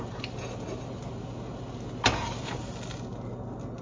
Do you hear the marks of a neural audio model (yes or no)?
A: no